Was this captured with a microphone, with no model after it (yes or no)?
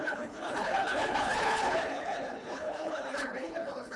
no